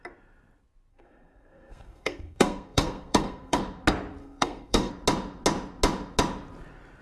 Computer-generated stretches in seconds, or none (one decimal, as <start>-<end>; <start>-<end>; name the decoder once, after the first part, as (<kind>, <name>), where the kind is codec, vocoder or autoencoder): 0.9-3.6 (codec, SNAC); 4.2-4.9